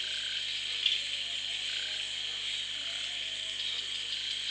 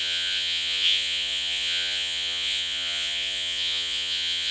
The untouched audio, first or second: first